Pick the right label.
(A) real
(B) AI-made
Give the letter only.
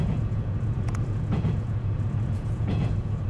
B